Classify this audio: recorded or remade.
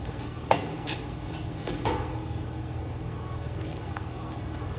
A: remade